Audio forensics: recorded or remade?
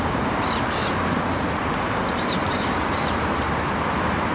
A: remade